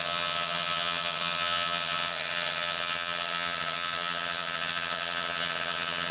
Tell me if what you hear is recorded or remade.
remade